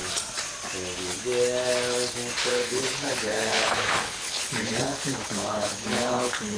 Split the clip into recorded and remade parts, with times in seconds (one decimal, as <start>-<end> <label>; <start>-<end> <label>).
0.0-2.5 recorded; 2.5-6.6 remade